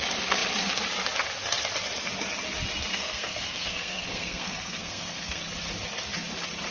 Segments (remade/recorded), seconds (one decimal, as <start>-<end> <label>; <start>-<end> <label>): 0.0-2.9 recorded; 2.9-5.4 remade; 5.4-6.7 recorded